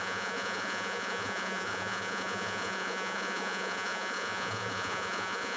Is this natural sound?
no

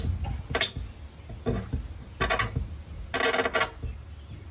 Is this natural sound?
yes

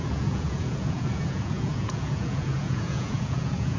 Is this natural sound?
no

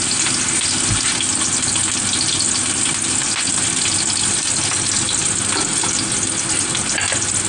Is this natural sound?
yes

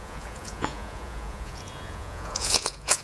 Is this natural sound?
no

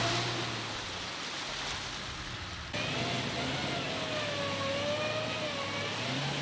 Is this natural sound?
yes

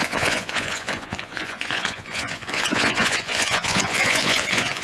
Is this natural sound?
no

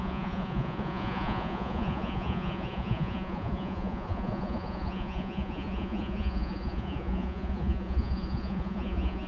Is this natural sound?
no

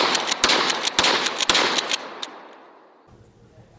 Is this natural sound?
yes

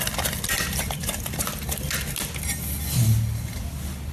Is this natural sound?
yes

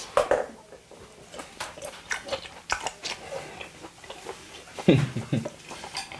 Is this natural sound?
yes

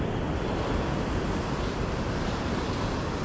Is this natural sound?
yes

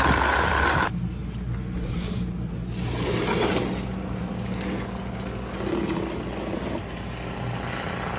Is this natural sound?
yes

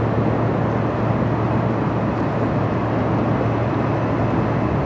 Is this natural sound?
yes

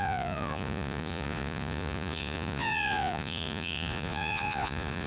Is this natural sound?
no